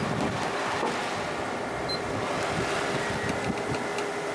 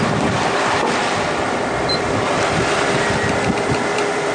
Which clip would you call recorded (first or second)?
first